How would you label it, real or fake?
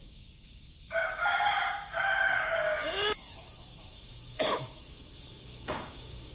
fake